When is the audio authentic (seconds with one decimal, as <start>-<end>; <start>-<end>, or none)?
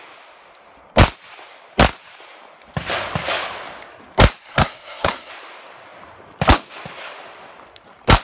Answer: 0.0-4.4; 5.3-8.2